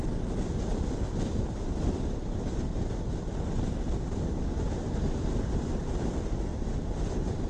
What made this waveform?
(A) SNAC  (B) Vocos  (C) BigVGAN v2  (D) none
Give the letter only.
D